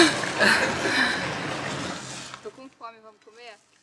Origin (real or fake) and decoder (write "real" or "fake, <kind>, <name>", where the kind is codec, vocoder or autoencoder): real